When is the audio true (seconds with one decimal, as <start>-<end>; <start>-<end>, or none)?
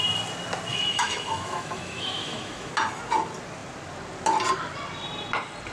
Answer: 0.0-0.7; 2.7-5.7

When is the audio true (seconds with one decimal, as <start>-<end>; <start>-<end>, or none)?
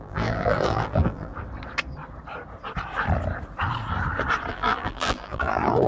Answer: 1.3-4.5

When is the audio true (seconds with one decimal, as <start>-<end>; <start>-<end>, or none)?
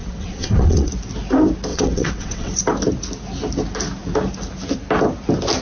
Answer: 0.9-1.7; 2.6-5.6